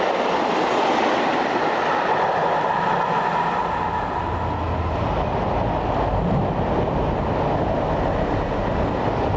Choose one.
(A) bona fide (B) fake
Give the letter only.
A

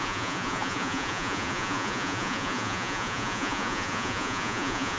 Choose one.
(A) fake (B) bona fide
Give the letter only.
A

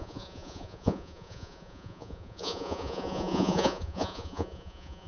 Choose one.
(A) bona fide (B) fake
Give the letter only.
B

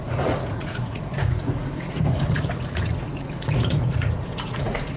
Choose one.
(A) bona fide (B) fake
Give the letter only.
B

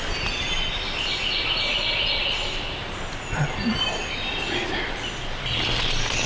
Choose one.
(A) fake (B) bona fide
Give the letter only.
B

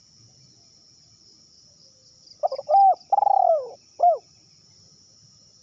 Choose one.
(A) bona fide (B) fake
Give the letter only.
A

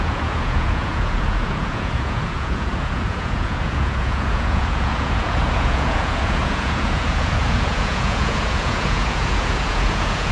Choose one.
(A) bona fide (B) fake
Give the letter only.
B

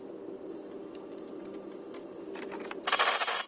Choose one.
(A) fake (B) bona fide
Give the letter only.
B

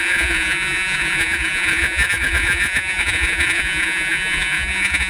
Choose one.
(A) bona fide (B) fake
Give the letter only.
B